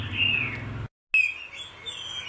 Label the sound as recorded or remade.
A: recorded